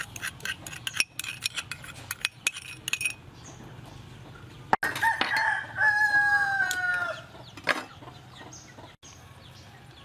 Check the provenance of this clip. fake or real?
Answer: real